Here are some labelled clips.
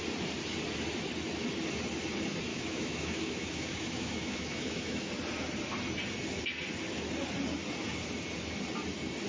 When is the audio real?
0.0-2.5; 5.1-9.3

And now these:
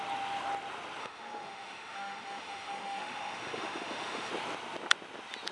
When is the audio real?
0.0-1.0; 4.3-5.5

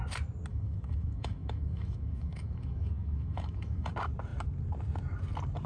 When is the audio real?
0.0-0.5; 3.9-5.7

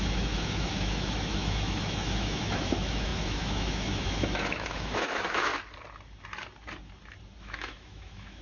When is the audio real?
5.5-7.4

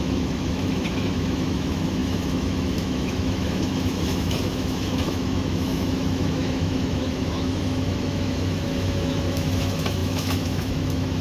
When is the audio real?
none

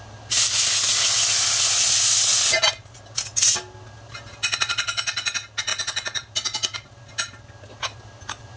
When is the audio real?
0.0-8.6